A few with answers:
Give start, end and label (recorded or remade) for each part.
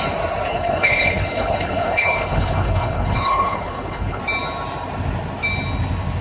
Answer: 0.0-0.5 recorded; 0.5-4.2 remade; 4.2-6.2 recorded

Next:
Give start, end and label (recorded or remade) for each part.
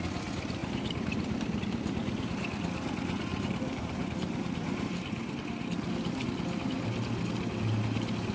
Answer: 0.0-0.6 recorded; 0.6-1.6 remade; 1.6-3.3 recorded; 3.3-5.3 remade; 5.3-8.3 recorded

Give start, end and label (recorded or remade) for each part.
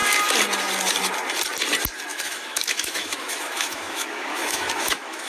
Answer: 0.0-2.1 recorded; 2.1-5.3 remade